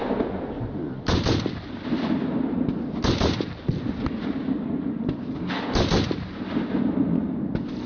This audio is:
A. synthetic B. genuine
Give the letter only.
B